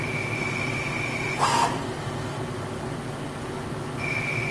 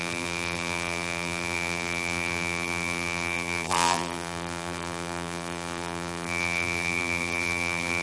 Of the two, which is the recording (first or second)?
first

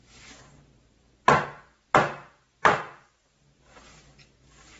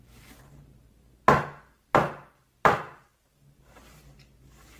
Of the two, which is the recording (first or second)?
first